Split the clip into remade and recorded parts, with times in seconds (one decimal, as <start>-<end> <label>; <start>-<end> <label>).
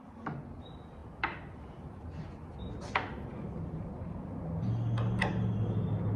0.0-6.2 recorded